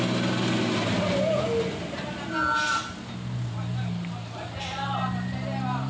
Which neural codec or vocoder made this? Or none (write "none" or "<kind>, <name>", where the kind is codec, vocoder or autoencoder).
none